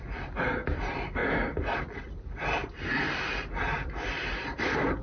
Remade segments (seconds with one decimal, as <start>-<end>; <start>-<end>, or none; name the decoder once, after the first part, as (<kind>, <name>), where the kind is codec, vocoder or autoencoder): 2.6-5.0 (vocoder, BigVGAN v2)